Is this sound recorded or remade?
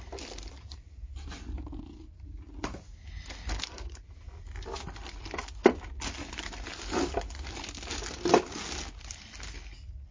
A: recorded